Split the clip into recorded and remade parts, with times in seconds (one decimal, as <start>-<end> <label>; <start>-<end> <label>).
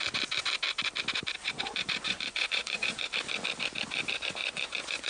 0.0-1.4 recorded; 1.4-3.1 remade; 3.1-4.4 recorded; 4.4-5.1 remade